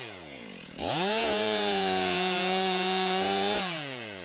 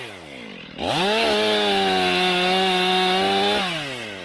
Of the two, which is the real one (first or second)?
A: second